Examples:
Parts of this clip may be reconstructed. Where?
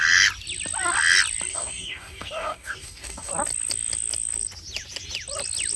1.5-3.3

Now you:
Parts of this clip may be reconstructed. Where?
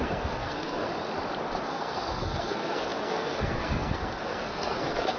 0.0-0.9; 1.6-5.2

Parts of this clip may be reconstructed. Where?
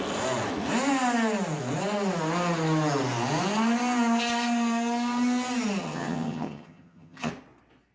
5.8-7.3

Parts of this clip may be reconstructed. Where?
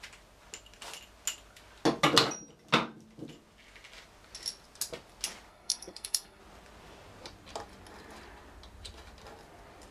5.5-6.4